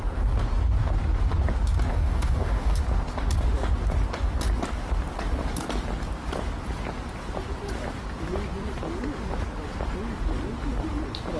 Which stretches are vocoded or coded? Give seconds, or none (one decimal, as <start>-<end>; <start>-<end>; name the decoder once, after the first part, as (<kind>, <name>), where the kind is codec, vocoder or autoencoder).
1.9-2.8 (codec, DAC)